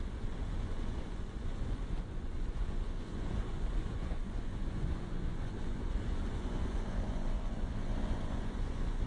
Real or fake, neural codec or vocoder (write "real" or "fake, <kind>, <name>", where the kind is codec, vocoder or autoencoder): fake, vocoder, Vocos